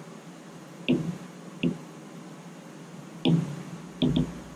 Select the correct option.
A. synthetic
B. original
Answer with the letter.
B